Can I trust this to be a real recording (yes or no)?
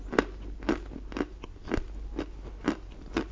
yes